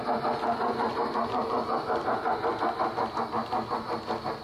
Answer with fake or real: real